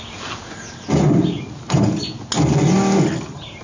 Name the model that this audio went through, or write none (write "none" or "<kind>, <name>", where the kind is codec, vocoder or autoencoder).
none